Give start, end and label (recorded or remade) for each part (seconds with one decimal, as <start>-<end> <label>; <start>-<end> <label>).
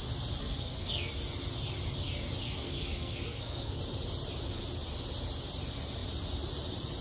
0.0-0.4 recorded; 0.4-1.1 remade; 1.1-2.4 recorded; 2.4-3.8 remade; 3.8-7.0 recorded